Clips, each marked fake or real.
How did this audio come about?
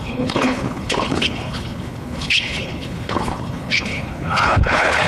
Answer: fake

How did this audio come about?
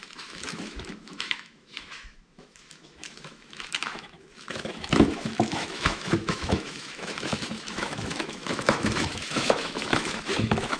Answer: fake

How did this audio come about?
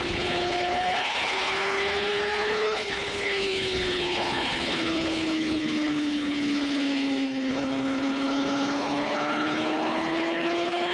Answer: fake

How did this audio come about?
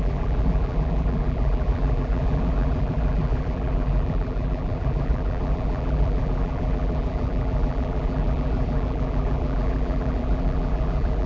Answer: fake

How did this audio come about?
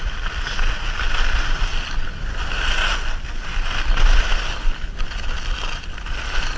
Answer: real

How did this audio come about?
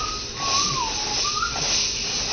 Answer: real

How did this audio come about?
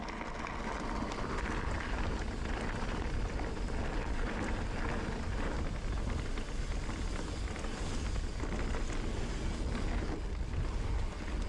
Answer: real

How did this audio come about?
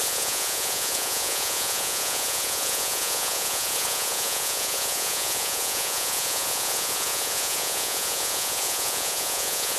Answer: fake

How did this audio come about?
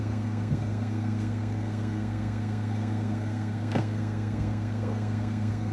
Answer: fake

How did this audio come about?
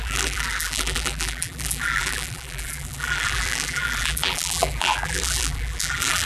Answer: fake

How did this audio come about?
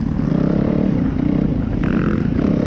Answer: real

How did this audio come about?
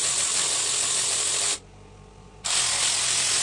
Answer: real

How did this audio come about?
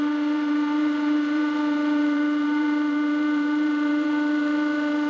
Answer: fake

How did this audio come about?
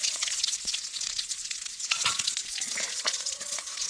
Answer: fake